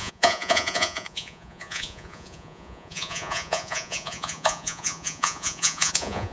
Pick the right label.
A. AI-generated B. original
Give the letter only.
A